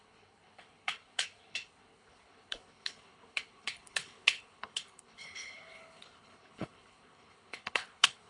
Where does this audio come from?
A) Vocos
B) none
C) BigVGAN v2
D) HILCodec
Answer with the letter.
D